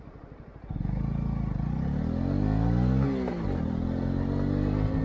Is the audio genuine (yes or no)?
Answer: yes